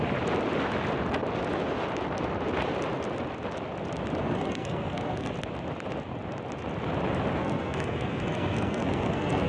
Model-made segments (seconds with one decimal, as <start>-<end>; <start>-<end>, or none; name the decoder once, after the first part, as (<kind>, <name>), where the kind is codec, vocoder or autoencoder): 4.2-5.3 (codec, SNAC); 7.4-9.5